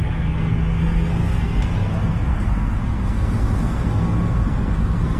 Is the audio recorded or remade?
remade